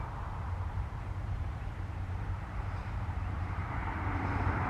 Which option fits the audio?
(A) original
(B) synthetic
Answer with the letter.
B